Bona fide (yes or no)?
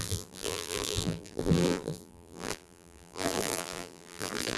no